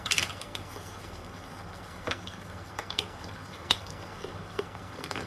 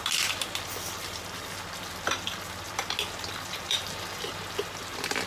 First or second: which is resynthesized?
first